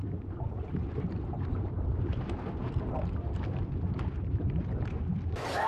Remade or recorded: recorded